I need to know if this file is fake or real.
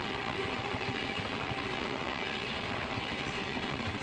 fake